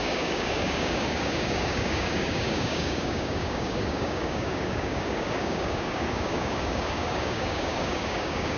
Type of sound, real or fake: fake